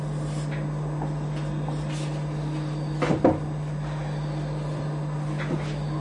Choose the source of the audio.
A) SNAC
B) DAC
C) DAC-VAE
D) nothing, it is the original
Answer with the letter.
D